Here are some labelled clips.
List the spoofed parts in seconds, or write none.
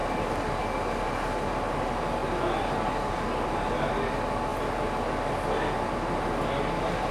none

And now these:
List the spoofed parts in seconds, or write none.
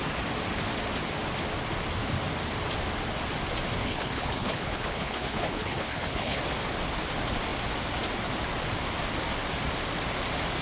3.8-6.4 (codec, HILCodec)